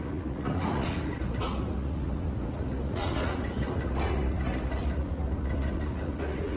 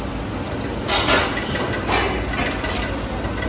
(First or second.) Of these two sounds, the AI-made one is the first